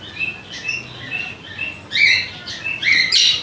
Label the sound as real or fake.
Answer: real